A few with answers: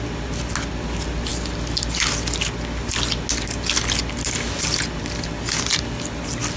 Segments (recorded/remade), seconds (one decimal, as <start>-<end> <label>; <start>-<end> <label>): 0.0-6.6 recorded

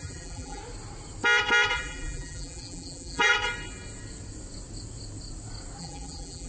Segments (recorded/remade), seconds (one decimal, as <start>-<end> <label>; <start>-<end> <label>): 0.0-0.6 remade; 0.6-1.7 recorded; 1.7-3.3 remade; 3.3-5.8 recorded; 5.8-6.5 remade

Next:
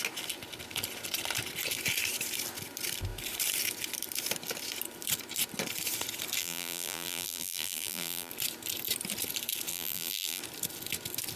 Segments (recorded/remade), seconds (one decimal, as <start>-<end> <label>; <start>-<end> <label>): 0.0-6.4 recorded; 6.4-8.3 remade; 8.3-9.7 recorded; 9.7-10.4 remade; 10.4-11.4 recorded